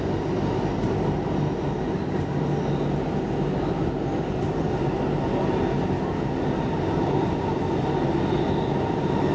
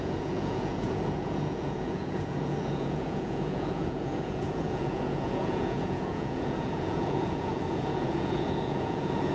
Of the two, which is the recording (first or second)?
first